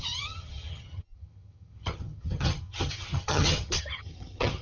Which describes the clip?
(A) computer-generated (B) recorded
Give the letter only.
A